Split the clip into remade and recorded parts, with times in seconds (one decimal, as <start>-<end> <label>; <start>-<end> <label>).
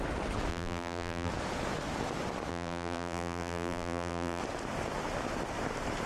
0.0-0.5 recorded; 0.5-1.3 remade; 1.3-2.5 recorded; 2.5-4.4 remade; 4.4-6.1 recorded